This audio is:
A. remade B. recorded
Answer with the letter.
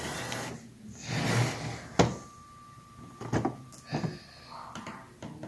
B